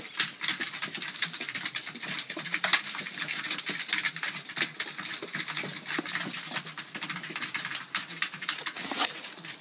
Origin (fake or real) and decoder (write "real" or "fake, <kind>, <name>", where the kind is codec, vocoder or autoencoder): real